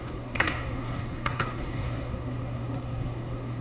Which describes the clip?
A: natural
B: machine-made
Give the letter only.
B